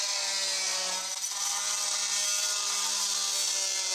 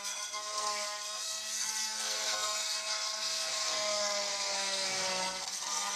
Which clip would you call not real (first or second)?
second